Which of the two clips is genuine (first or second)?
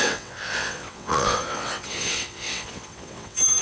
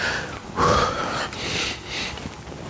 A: second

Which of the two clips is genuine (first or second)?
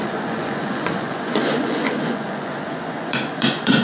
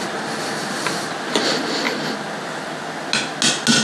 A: second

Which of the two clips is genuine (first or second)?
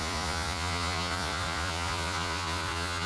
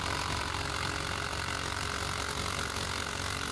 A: second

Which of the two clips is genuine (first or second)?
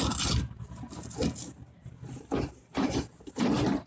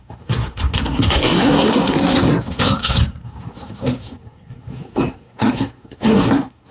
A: first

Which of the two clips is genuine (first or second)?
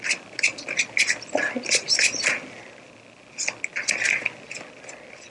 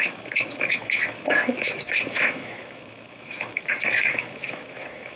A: first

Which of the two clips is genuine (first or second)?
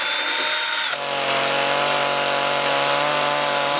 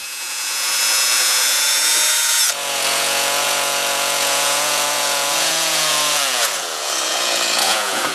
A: first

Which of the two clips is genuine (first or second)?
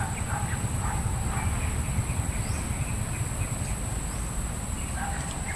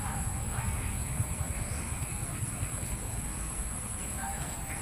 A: first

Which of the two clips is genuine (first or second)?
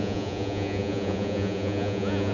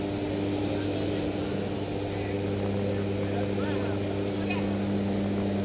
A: second